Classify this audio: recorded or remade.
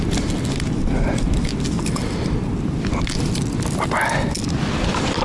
recorded